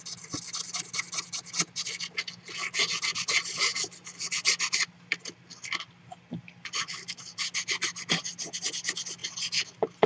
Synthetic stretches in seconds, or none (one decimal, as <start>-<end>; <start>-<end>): none